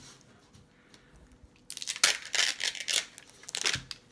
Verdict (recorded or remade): recorded